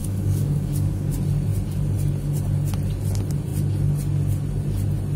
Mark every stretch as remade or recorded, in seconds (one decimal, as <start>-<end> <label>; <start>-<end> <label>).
0.0-1.1 remade; 1.1-5.2 recorded